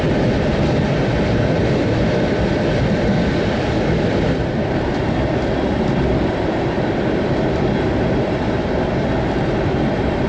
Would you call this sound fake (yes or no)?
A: yes